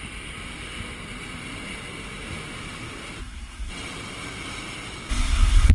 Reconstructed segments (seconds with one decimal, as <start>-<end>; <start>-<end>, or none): 3.2-3.7; 5.1-5.7